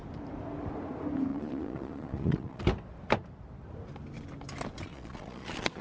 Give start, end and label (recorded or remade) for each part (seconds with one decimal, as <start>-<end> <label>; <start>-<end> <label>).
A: 0.0-1.3 recorded; 1.3-2.6 remade; 2.6-4.9 recorded; 4.9-5.8 remade